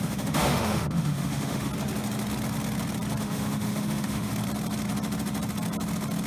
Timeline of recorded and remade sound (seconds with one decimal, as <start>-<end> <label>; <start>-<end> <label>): 0.0-1.7 remade; 1.7-3.2 recorded; 3.2-4.3 remade; 4.3-6.3 recorded